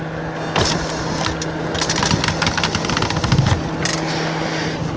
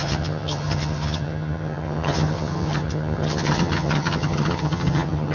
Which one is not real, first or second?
second